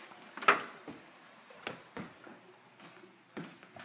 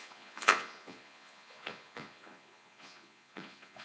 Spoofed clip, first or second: second